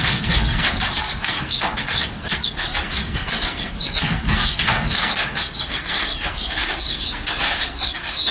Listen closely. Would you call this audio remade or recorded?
remade